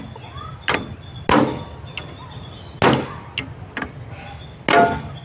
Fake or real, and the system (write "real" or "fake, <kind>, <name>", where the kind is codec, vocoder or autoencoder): real